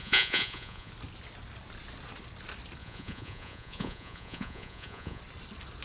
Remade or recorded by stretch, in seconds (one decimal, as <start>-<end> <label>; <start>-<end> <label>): 0.0-0.9 remade; 0.9-2.8 recorded; 2.8-5.2 remade; 5.2-5.8 recorded